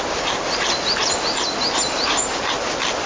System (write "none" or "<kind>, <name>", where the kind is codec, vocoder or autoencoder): none